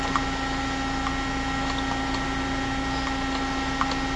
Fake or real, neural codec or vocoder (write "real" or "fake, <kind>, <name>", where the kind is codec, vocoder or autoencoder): real